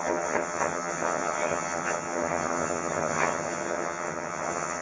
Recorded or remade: remade